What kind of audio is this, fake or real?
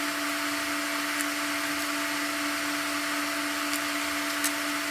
real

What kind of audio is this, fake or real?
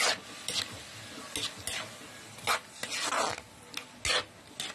real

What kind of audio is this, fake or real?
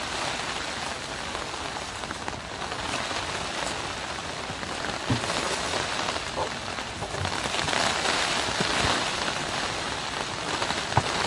real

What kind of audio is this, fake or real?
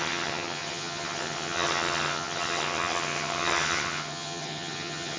fake